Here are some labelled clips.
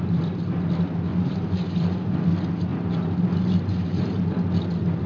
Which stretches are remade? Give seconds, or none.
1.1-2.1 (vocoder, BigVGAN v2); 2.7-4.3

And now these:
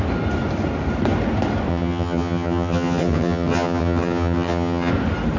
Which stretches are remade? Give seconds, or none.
1.7-4.9 (vocoder, HiFi-GAN)